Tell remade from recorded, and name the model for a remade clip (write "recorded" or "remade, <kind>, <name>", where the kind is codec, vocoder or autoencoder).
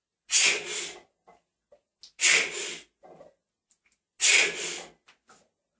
recorded